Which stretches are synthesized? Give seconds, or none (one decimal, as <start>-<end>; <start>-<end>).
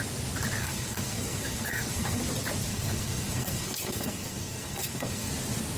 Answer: 0.6-2.2; 2.7-5.3